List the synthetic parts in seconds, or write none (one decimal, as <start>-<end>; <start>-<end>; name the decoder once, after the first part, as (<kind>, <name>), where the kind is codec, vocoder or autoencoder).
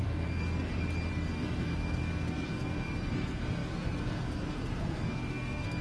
0.0-0.7 (codec, SNAC); 1.3-5.8